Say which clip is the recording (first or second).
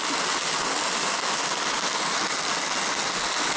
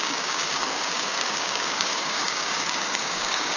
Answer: first